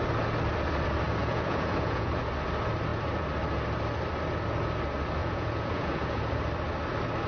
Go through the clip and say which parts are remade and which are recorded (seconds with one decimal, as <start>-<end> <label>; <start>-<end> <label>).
0.0-1.2 recorded; 1.2-2.1 remade; 2.1-5.2 recorded; 5.2-6.4 remade; 6.4-7.3 recorded